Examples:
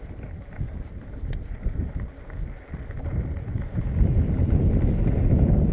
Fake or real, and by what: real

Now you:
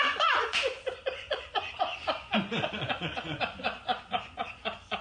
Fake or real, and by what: fake, vocoder, Vocos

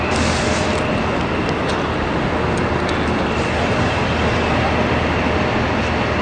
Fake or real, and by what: real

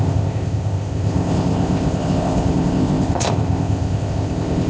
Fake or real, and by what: fake, codec, ZipCodec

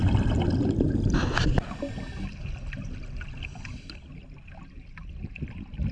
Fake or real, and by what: real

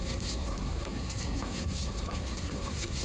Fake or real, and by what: fake, codec, SNAC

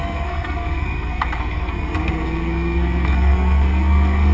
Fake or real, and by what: fake, codec, SNAC